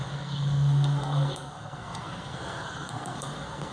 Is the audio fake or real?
fake